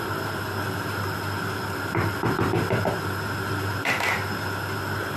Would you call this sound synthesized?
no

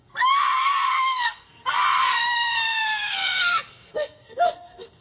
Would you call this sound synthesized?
yes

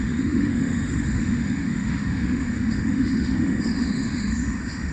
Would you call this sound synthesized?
yes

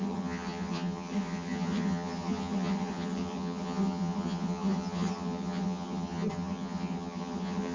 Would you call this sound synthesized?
yes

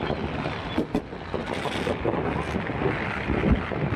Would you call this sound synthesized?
no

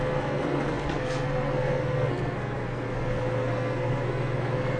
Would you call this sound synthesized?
yes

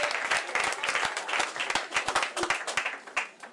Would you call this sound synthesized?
no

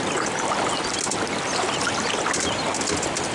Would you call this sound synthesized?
no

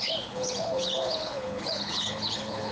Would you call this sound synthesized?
yes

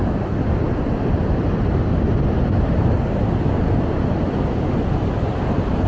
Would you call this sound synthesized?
no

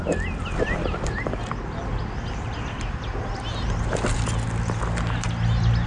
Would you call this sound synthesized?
no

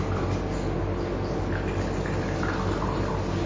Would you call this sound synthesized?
no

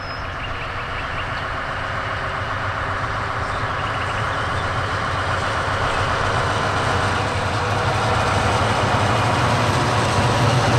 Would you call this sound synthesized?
no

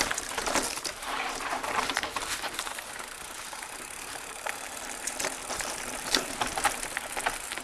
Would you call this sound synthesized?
yes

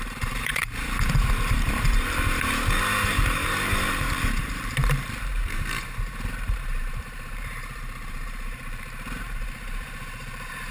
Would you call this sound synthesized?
yes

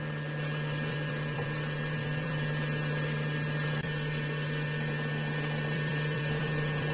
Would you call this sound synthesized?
yes